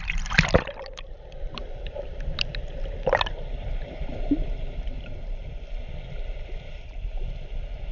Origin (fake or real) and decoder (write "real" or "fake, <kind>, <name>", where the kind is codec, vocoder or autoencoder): fake, vocoder, BigVGAN v2